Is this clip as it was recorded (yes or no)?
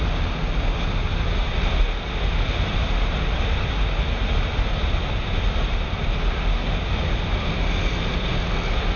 yes